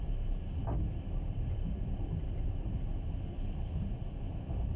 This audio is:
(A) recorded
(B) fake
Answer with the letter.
A